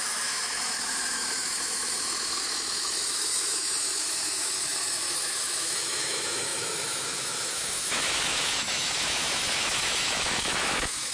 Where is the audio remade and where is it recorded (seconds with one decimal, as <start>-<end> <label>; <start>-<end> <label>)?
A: 0.0-11.1 remade